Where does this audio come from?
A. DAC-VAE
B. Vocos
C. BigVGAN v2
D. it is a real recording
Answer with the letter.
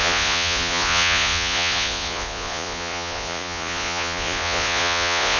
B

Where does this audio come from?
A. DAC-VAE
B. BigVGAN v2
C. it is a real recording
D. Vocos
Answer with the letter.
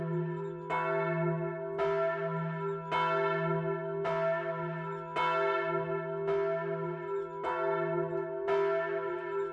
C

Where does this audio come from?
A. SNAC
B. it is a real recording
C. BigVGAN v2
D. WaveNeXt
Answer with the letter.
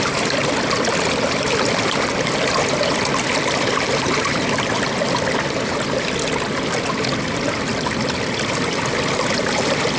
B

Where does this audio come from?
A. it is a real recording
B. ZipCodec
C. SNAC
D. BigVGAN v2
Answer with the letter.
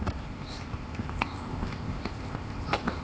B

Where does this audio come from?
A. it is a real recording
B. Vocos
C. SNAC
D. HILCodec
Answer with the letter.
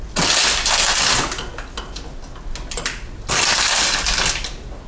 A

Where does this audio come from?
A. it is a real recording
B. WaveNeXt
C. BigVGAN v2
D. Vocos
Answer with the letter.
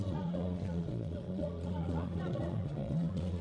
D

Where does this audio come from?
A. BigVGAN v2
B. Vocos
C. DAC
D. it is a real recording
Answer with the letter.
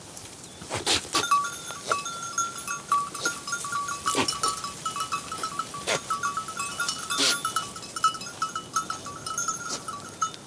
D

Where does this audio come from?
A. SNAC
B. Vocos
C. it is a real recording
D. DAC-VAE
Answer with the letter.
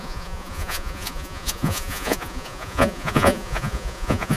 B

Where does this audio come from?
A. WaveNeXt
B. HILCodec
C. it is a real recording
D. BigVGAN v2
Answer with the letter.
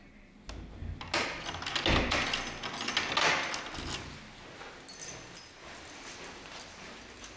C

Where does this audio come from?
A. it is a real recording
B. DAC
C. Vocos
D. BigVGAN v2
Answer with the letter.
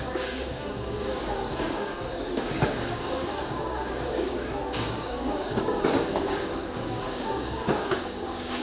B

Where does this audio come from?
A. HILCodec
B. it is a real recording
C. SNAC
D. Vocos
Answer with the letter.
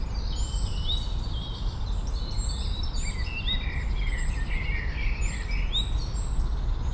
B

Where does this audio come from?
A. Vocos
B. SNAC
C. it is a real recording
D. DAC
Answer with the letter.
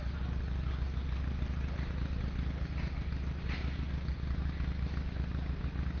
C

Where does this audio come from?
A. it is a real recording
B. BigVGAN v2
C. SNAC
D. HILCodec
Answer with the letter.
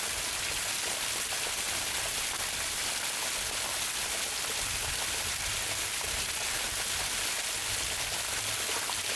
A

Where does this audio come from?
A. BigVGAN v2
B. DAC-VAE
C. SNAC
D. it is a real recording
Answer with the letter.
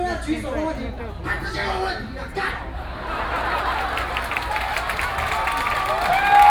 D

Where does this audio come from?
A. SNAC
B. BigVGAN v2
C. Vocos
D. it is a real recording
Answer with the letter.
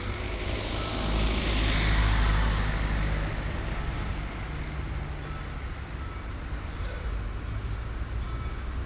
D